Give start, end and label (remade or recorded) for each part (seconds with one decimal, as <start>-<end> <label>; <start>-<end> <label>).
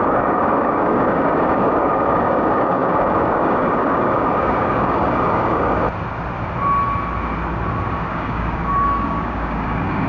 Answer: 0.0-5.8 remade; 5.8-8.1 recorded; 8.1-10.1 remade